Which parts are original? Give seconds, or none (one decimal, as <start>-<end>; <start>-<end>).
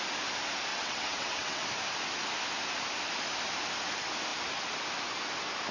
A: 0.0-0.7; 1.6-5.7